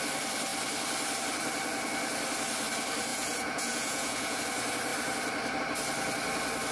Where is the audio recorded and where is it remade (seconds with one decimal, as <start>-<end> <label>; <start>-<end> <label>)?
0.0-3.1 recorded; 3.1-4.4 remade; 4.4-6.7 recorded